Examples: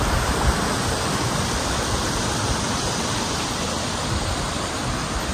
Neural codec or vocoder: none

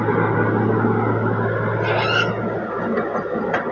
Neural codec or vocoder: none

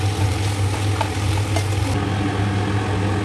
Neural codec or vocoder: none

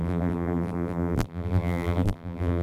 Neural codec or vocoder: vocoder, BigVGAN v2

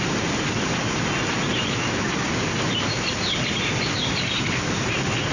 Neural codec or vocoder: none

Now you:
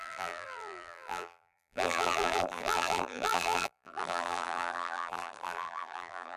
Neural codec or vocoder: vocoder, BigVGAN v2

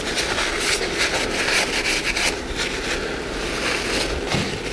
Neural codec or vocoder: none